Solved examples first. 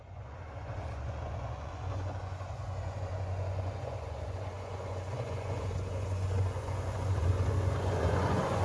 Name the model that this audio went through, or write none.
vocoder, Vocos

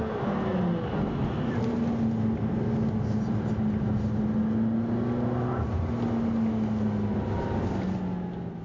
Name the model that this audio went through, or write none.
none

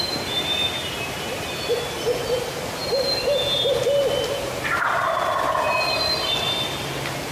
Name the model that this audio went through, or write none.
none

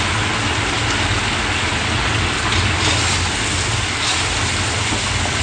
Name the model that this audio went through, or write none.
none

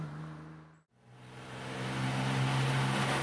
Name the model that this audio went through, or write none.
none